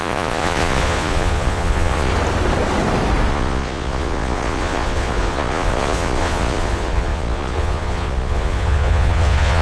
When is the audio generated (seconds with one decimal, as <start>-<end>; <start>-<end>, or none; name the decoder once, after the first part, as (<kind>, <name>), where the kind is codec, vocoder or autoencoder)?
0.0-2.1 (vocoder, Vocos); 3.3-9.6